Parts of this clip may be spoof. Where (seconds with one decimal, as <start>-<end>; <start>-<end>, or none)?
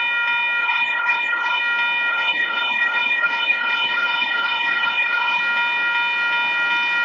0.6-1.6; 2.1-5.4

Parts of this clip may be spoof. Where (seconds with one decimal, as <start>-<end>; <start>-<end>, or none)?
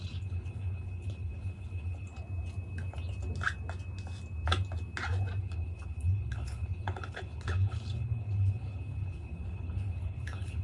0.0-2.1; 5.4-10.6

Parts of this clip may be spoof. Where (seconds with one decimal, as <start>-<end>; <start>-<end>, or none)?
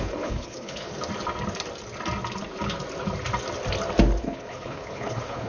0.0-0.9; 4.2-5.5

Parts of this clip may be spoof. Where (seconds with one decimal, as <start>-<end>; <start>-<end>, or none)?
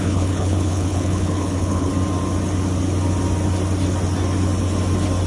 0.0-1.9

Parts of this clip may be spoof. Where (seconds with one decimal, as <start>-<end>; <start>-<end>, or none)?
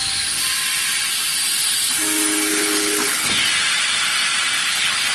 2.5-3.3; 4.6-5.1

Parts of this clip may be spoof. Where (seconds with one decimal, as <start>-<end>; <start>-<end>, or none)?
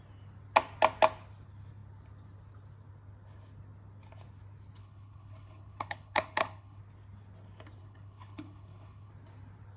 4.8-6.8; 7.8-9.1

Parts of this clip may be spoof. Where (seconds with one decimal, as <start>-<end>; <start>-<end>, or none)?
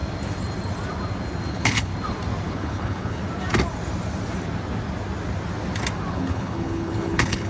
1.5-1.9; 2.5-3.2; 6.1-7.5